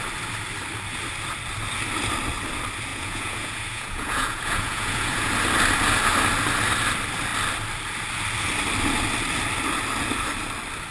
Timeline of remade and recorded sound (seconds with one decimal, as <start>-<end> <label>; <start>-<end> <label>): 0.0-2.9 recorded; 2.9-5.3 remade; 5.3-10.9 recorded